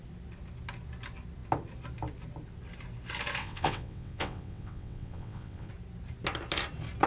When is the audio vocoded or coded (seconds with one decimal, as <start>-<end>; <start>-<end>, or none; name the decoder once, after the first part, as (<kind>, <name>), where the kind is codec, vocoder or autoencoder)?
3.4-5.7 (vocoder, WaveNeXt)